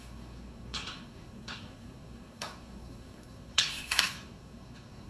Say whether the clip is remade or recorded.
remade